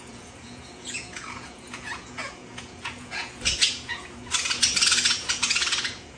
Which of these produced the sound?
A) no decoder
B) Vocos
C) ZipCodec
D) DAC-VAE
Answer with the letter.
B